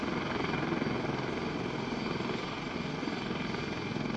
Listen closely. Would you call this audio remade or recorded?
recorded